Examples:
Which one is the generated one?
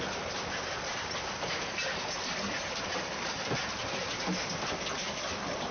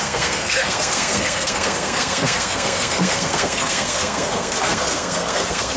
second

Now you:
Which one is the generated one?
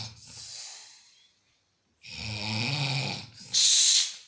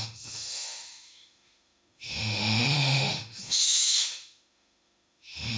second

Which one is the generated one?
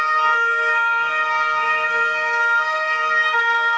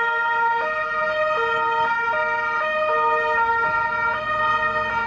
first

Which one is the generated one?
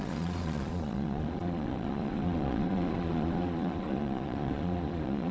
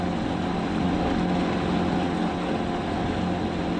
first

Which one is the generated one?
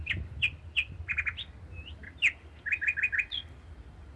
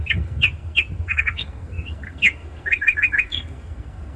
second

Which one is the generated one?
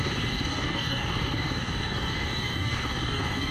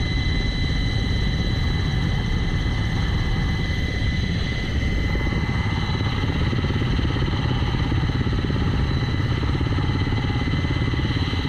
first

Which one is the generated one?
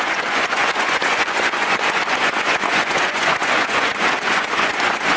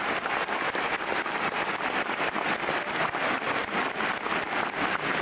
first